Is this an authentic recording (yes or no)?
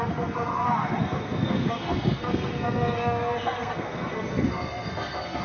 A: no